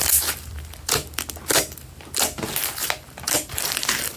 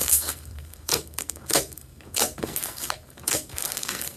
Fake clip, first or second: second